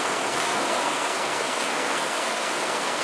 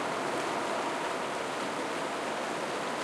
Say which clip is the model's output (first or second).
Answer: first